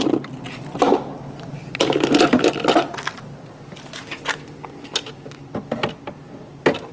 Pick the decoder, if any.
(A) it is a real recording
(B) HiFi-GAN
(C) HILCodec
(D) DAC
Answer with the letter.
A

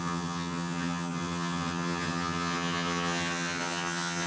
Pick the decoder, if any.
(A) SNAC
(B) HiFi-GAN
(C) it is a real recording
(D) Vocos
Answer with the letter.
B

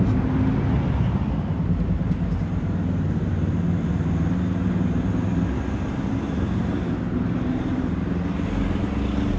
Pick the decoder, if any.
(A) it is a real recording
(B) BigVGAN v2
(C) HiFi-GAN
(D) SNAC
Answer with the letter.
A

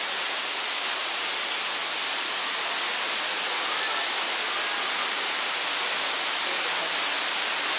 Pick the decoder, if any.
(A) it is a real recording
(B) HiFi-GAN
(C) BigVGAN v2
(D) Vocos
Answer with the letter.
A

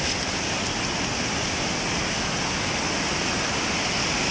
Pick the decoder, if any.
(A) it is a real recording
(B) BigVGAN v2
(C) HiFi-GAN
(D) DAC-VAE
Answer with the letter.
A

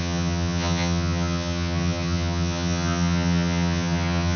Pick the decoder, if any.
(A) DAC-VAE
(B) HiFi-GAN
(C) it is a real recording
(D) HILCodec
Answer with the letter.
B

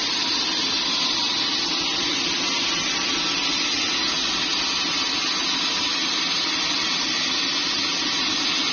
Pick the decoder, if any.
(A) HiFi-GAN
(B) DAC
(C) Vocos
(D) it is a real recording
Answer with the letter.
D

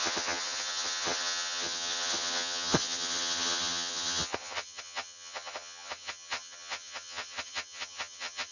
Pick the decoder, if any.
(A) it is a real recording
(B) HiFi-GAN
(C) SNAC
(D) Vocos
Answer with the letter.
B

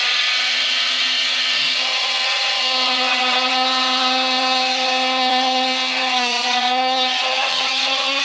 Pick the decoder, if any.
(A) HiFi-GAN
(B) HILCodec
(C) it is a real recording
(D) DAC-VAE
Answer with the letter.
A